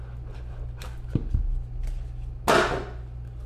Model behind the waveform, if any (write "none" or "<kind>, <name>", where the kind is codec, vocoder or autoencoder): none